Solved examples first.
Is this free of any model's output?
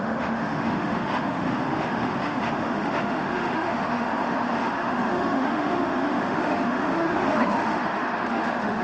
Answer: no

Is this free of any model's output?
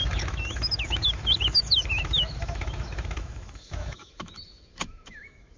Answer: no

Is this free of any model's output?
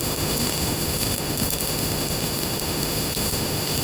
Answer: no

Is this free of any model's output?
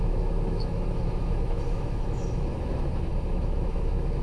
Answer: no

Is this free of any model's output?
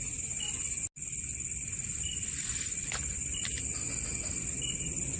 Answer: yes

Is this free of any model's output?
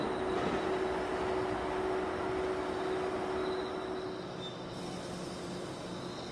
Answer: yes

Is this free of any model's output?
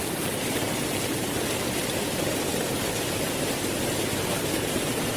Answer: yes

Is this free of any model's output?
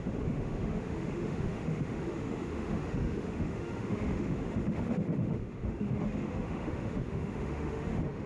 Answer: no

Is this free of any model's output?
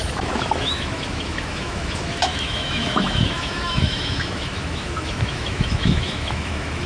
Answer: no